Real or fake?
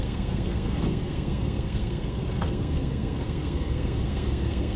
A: fake